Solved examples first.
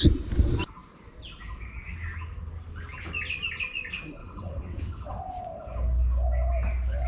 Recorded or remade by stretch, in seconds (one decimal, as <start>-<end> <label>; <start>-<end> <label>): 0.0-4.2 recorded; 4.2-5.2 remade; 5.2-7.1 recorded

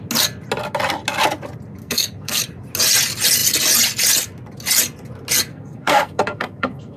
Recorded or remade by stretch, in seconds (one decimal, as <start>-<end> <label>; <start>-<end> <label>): 0.0-1.8 recorded; 1.8-2.4 remade; 2.4-5.5 recorded; 5.5-7.0 remade

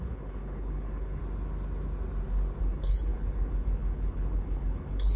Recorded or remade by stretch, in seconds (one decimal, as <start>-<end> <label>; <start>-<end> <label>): 0.0-1.2 remade; 1.2-2.6 recorded; 2.6-5.2 remade

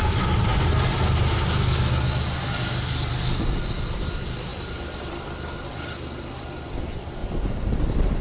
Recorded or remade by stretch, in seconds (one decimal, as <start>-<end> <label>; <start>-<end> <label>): 0.0-0.5 remade; 0.5-2.4 recorded; 2.4-7.2 remade; 7.2-7.7 recorded; 7.7-8.2 remade

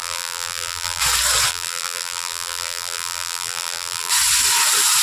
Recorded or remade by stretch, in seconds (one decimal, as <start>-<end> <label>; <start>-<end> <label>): 0.0-1.0 remade; 1.0-1.5 recorded; 1.5-4.1 remade; 4.1-5.0 recorded

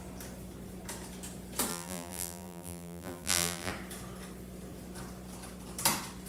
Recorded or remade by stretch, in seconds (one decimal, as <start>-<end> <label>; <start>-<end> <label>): 0.0-1.7 recorded; 1.7-3.7 remade; 3.7-6.3 recorded